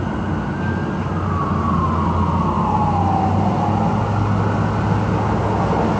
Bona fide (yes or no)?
yes